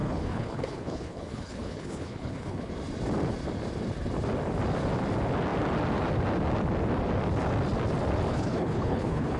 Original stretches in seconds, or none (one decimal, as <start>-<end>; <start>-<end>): 2.7-8.3